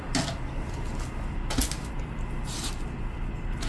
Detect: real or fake real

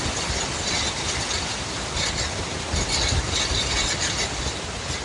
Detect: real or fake real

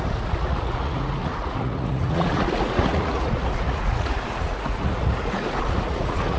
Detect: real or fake fake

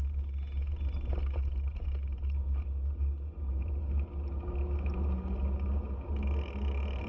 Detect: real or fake real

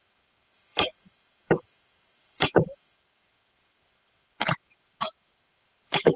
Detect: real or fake fake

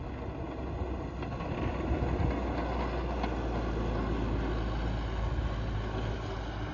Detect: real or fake real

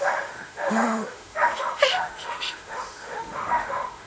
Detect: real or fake fake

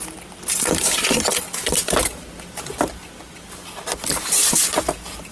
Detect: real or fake real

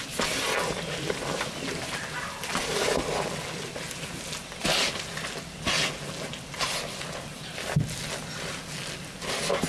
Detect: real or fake real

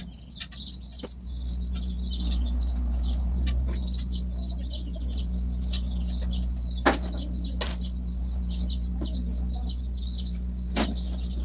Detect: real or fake real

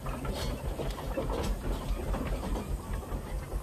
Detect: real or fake real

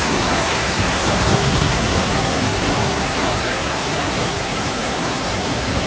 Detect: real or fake fake